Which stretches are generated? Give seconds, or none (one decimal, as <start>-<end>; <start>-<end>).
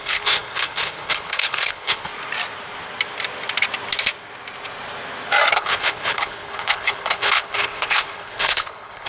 0.0-2.1; 5.5-9.1